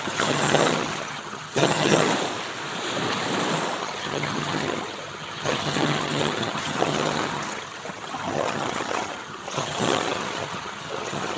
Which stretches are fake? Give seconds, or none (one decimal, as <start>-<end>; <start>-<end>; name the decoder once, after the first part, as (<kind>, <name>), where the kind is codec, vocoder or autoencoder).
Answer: 0.0-2.1 (vocoder, HiFi-GAN); 3.8-11.4